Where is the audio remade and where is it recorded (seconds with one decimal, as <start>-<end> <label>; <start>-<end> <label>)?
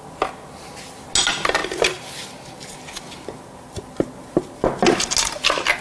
0.0-5.8 recorded